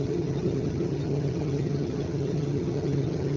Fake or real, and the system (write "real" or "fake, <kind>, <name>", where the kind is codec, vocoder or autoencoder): fake, vocoder, HiFi-GAN